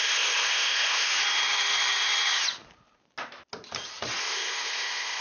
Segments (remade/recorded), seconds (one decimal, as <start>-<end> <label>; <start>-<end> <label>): 0.0-1.1 remade; 1.1-4.2 recorded; 4.2-5.2 remade